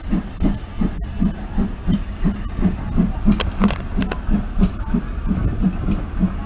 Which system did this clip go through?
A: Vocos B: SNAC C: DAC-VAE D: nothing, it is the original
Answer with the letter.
D